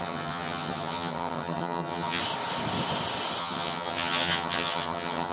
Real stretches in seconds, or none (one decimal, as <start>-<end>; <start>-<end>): 2.2-3.4